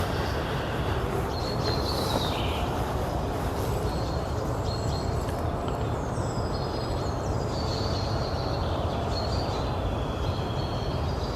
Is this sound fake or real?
real